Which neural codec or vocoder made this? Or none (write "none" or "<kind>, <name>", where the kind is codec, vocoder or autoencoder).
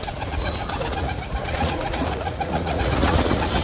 vocoder, Vocos